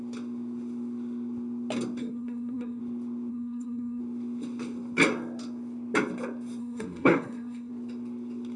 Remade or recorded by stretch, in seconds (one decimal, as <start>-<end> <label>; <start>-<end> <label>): 0.0-2.0 recorded; 2.0-2.8 remade; 2.8-3.3 recorded; 3.3-4.0 remade; 4.0-6.6 recorded; 6.6-7.7 remade; 7.7-8.6 recorded